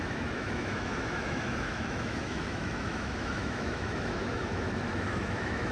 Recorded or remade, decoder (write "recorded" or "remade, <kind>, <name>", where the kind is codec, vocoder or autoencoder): remade, autoencoder, DAC-VAE